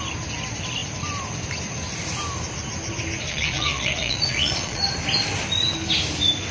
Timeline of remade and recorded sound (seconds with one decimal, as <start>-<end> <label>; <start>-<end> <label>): 0.0-3.3 recorded; 3.3-4.8 remade; 4.8-6.5 recorded